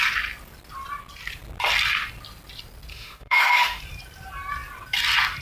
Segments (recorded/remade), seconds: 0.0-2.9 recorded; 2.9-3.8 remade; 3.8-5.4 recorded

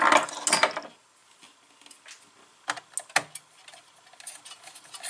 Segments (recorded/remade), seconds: 0.0-5.1 recorded